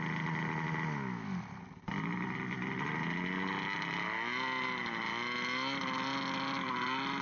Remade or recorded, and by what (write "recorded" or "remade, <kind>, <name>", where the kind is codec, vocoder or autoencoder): recorded